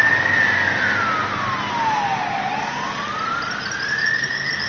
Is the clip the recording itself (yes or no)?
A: yes